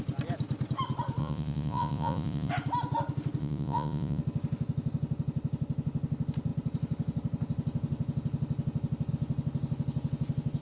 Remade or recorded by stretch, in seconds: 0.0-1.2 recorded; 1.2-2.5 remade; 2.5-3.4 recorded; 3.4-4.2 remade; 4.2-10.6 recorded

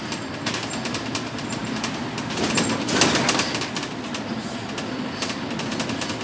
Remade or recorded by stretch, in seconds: 0.0-6.2 recorded